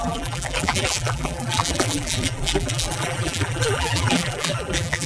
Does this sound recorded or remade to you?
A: remade